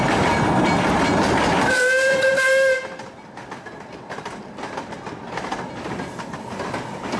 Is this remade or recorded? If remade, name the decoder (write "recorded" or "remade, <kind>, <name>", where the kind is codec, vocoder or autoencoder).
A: recorded